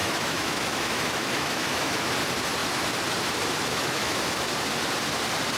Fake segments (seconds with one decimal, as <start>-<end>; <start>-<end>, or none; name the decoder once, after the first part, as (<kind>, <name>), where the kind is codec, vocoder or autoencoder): 0.0-2.1 (autoencoder, DAC-VAE); 3.7-4.2